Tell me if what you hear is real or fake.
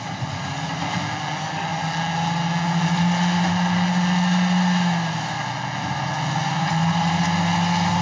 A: real